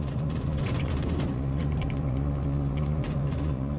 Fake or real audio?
fake